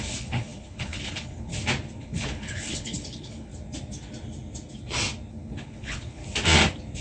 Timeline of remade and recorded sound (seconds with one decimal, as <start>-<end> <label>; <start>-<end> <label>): 0.0-1.5 remade; 1.5-2.0 recorded; 2.0-3.5 remade; 3.5-5.3 recorded; 5.3-6.2 remade; 6.2-7.0 recorded